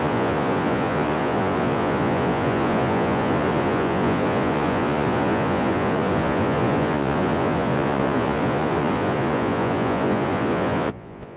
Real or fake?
fake